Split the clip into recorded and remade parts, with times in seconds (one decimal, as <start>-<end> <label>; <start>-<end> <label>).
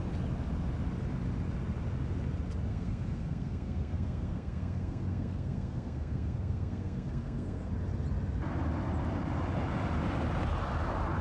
0.0-2.7 recorded; 2.7-7.7 remade; 7.7-11.2 recorded